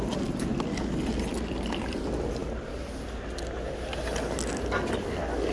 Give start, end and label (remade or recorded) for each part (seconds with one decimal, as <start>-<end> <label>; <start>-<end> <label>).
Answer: 0.0-5.5 recorded